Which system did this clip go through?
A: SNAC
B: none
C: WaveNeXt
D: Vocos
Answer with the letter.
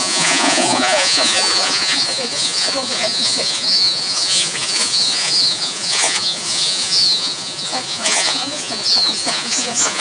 D